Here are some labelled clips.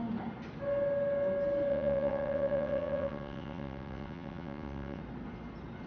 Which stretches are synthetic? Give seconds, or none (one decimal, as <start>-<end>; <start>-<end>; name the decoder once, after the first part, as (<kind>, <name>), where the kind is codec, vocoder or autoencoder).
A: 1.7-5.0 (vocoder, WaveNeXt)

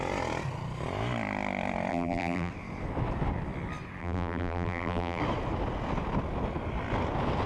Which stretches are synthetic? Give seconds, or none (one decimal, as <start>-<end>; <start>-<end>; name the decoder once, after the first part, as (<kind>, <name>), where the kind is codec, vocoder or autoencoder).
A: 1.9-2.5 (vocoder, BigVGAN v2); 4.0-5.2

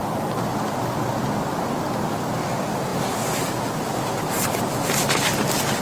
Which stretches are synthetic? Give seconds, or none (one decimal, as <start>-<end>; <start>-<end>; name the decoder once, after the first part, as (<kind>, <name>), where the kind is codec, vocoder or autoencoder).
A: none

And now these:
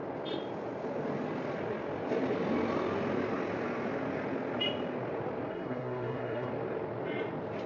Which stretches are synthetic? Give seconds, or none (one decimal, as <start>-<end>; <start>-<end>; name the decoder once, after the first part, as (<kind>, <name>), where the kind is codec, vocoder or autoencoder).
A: 5.5-6.5 (codec, SNAC)

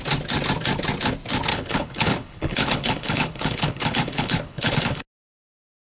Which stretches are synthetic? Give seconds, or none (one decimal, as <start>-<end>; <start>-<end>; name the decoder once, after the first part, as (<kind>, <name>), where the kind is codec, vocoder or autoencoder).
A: 1.5-5.0 (codec, HILCodec)

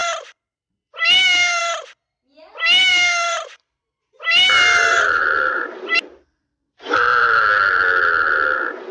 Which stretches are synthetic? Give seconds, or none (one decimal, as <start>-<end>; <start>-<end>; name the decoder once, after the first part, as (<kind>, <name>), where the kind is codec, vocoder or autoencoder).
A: 0.0-1.6 (vocoder, BigVGAN v2); 2.8-7.2

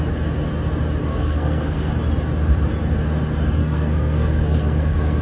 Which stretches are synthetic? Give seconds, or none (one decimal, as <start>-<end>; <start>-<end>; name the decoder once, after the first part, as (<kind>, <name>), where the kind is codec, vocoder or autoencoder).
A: 1.1-1.9 (codec, SNAC); 3.6-5.2

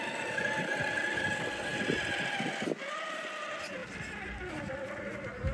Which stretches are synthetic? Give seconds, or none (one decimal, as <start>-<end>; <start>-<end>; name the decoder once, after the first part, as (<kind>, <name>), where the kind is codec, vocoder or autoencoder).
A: 3.8-5.0 (vocoder, BigVGAN v2)